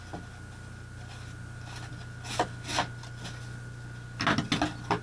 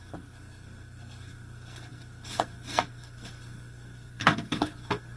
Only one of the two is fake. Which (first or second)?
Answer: second